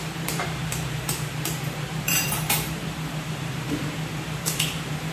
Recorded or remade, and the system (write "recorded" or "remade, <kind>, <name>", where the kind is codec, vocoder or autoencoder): remade, vocoder, BigVGAN v2